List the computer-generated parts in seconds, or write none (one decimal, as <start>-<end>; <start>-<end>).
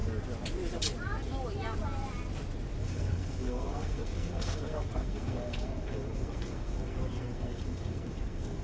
2.8-8.6